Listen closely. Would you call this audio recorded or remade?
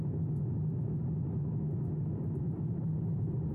recorded